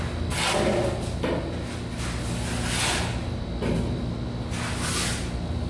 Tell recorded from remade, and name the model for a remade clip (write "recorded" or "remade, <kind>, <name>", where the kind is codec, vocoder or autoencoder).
recorded